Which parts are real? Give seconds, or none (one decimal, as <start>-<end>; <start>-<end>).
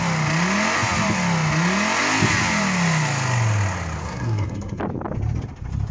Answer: 0.0-4.0; 4.8-5.9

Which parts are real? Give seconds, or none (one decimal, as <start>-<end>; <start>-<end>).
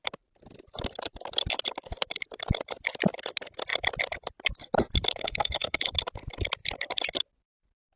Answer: 0.0-5.2; 5.8-8.0